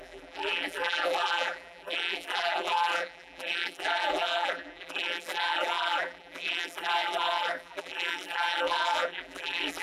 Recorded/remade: remade